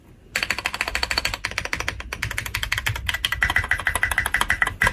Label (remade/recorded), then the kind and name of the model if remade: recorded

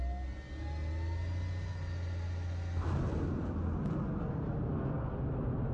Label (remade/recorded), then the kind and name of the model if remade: recorded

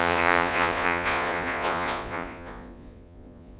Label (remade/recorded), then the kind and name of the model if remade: remade, vocoder, Vocos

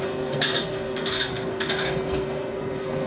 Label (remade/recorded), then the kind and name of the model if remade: remade, codec, SNAC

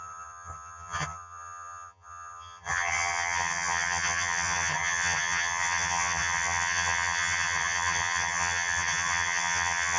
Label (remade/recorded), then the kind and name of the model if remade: remade, vocoder, HiFi-GAN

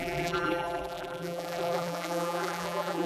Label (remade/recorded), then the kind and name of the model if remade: remade, vocoder, BigVGAN v2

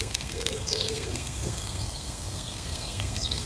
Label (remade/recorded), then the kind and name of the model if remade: remade, codec, SNAC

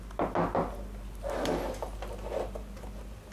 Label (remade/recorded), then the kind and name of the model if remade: recorded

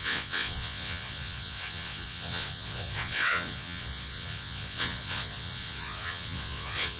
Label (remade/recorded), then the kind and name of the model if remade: remade, vocoder, WaveNeXt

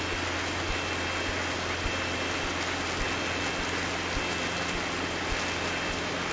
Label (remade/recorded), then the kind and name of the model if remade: recorded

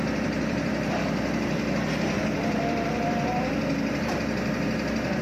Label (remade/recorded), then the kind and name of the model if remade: remade, vocoder, BigVGAN v2